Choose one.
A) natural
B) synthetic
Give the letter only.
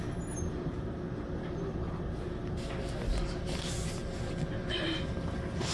A